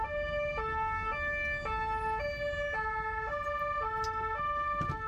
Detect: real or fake real